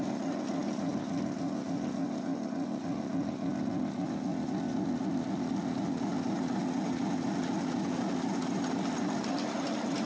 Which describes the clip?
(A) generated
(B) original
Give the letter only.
B